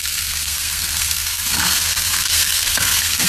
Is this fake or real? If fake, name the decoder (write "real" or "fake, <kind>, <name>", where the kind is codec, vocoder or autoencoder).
fake, codec, SNAC